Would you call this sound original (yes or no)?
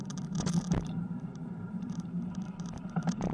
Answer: no